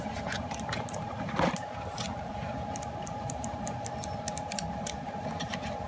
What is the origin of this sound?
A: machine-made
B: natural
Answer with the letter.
A